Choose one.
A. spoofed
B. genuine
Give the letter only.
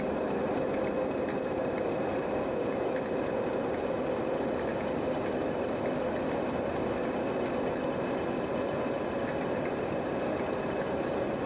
B